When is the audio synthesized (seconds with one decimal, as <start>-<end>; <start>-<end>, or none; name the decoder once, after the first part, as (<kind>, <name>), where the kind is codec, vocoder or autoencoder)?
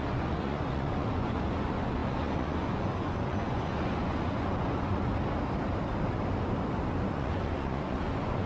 0.0-5.1 (vocoder, Vocos); 7.1-8.5